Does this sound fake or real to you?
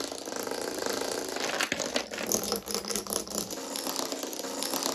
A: real